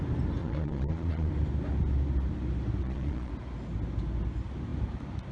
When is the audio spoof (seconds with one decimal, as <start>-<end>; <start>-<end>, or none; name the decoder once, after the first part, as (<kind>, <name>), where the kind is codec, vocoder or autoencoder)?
0.4-1.3 (vocoder, Vocos); 2.8-3.3

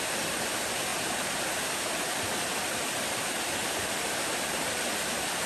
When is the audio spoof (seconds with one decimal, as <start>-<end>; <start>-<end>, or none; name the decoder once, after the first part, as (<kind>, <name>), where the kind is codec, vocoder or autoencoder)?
0.9-1.5 (vocoder, BigVGAN v2); 3.6-4.8